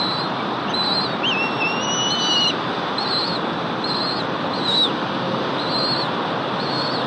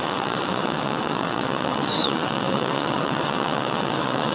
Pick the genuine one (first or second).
first